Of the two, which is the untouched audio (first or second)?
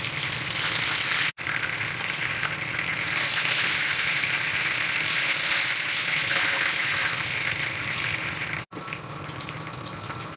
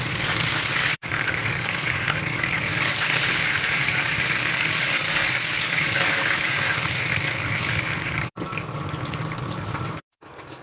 first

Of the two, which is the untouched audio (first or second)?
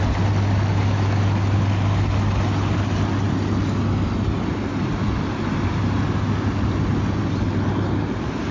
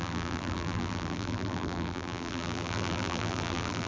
first